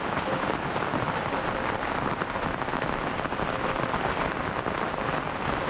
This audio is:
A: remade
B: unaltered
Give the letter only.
B